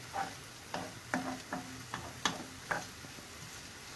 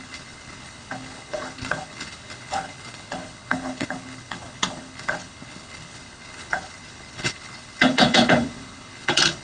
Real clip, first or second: first